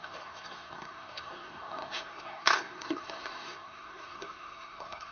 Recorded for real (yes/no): no